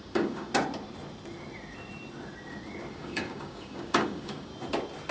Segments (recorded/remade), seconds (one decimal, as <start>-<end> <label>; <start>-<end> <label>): 0.0-0.5 remade; 0.5-2.9 recorded; 2.9-4.5 remade; 4.5-5.1 recorded